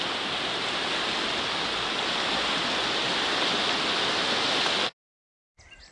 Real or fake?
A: real